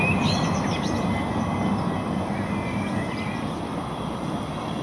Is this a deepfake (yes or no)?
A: no